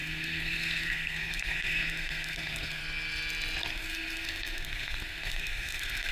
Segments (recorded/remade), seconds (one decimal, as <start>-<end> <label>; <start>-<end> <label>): 0.0-2.8 remade; 2.8-3.7 recorded; 3.7-6.1 remade